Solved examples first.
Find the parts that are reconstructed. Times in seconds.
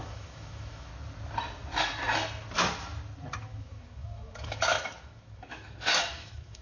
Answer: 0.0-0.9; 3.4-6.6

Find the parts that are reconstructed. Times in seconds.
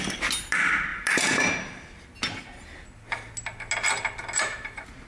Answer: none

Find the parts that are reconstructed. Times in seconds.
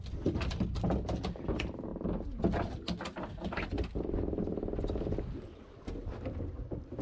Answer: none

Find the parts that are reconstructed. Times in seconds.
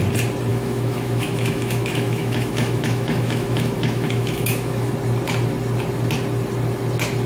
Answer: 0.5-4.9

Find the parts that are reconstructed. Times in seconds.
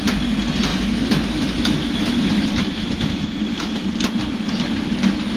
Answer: 0.7-3.9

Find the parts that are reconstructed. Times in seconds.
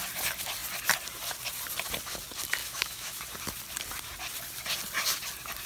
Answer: 2.6-3.2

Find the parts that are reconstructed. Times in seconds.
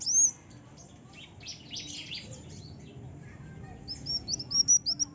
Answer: none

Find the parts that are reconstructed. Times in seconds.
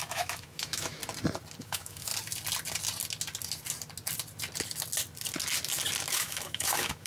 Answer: 0.0-1.0; 1.6-2.1; 6.1-7.1